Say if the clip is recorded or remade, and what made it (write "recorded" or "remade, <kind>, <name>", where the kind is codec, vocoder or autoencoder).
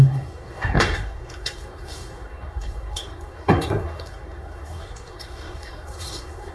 remade, codec, SNAC